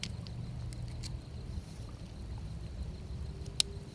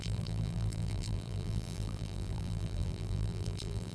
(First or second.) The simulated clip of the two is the second